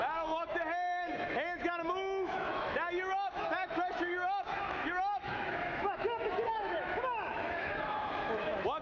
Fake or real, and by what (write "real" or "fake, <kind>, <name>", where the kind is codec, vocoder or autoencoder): fake, autoencoder, DAC-VAE